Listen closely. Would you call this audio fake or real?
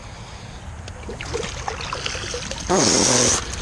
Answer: real